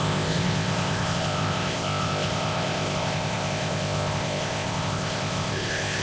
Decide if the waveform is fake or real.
fake